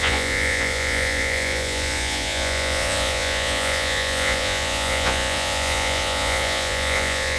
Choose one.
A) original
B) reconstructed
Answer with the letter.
B